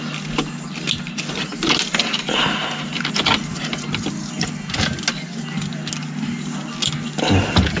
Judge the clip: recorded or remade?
recorded